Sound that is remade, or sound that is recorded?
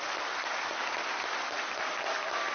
remade